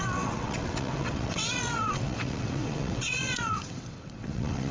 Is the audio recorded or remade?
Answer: remade